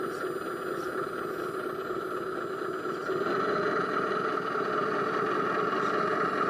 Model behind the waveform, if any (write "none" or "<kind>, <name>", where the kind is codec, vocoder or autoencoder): none